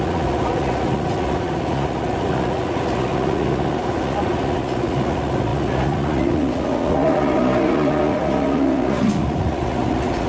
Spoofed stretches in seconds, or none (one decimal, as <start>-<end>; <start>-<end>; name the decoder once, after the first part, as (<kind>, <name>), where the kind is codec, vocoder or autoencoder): 0.0-10.3 (vocoder, Vocos)